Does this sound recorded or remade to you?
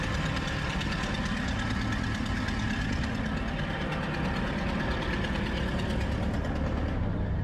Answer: recorded